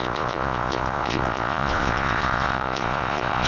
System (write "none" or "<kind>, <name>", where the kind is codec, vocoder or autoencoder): vocoder, Vocos